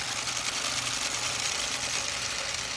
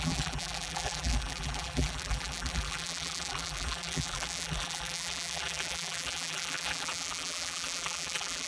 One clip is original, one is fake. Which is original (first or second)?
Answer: first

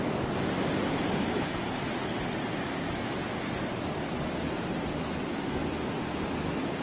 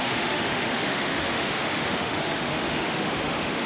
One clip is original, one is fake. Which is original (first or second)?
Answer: first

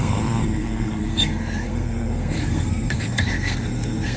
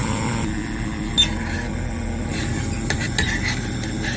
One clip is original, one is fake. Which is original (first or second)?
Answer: second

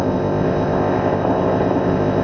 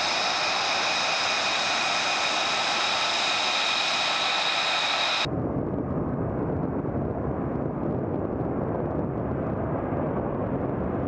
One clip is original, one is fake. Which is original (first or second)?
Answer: second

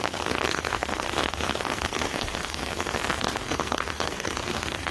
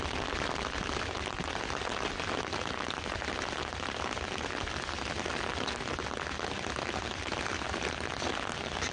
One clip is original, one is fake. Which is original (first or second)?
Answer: second